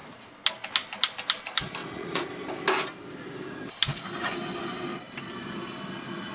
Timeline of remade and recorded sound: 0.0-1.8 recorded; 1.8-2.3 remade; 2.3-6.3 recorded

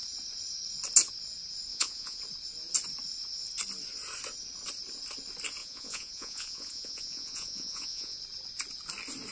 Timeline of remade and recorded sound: 0.0-1.7 recorded; 1.7-2.2 remade; 2.2-5.6 recorded; 5.6-8.2 remade; 8.2-9.3 recorded

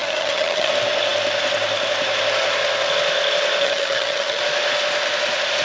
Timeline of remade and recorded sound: 0.0-0.7 remade; 0.7-3.6 recorded; 3.6-4.4 remade; 4.4-5.6 recorded

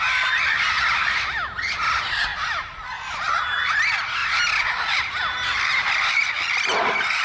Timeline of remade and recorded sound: 0.0-4.2 recorded; 4.2-5.2 remade; 5.2-7.2 recorded